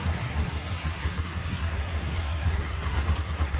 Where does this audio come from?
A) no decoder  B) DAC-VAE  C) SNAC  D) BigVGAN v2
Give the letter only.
C